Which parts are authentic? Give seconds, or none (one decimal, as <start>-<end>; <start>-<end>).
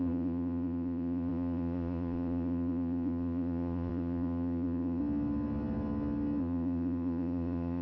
5.0-6.4